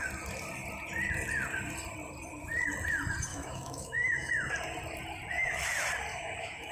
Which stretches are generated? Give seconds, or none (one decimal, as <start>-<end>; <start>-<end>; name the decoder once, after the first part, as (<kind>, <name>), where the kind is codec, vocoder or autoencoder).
3.3-4.3 (autoencoder, DAC-VAE); 6.1-6.7